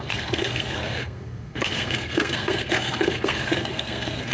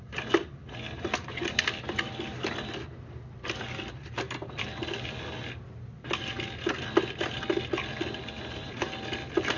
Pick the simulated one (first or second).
first